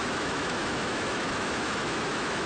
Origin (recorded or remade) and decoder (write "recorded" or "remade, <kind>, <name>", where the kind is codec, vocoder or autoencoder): remade, autoencoder, DAC-VAE